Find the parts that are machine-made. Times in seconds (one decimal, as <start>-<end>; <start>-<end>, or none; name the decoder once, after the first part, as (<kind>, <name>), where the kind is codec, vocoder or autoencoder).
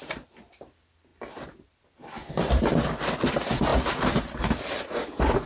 1.1-2.6 (vocoder, BigVGAN v2)